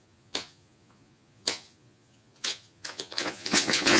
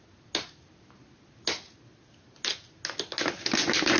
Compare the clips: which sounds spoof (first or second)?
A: first